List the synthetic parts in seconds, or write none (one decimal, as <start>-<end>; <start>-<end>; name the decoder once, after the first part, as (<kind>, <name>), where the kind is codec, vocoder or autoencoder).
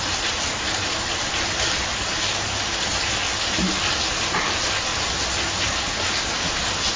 none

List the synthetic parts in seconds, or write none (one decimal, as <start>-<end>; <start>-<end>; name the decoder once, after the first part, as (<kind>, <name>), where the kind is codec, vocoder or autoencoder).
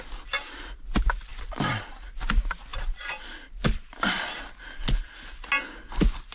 none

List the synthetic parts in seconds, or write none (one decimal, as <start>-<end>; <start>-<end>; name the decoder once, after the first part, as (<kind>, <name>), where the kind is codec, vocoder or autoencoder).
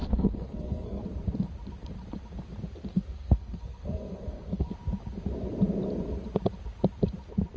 0.0-1.0 (codec, SNAC); 2.9-4.7